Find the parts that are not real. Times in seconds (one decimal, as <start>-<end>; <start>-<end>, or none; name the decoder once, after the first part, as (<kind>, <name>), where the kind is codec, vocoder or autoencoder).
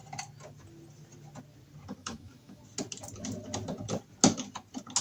2.0-2.6 (autoencoder, DAC-VAE)